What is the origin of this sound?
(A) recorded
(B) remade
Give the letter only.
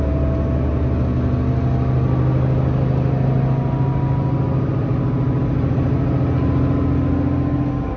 A